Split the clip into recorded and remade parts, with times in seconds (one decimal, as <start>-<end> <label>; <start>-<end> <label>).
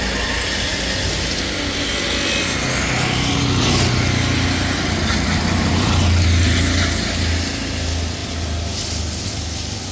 0.0-9.9 recorded